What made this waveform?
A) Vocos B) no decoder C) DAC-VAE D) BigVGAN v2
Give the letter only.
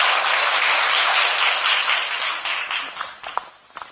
B